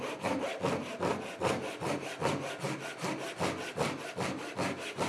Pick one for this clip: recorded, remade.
recorded